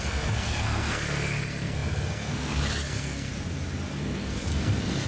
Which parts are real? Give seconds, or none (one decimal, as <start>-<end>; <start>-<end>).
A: 3.3-3.9